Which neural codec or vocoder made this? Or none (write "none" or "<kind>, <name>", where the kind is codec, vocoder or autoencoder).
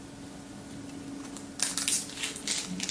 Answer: none